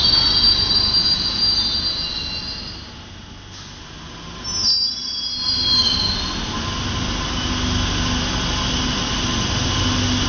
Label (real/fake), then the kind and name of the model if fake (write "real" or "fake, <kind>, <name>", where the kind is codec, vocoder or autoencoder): real